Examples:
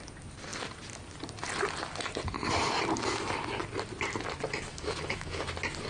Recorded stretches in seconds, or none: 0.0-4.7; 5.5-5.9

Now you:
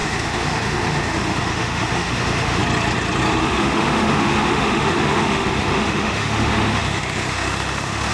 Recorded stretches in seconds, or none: 2.6-3.4

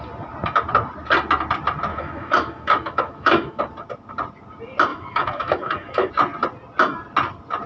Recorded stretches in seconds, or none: 0.0-1.9; 3.6-4.9; 6.1-7.7